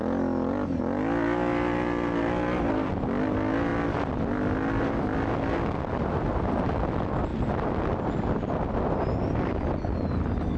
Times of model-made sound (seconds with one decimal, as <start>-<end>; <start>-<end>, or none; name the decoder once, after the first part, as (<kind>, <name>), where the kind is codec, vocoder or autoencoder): none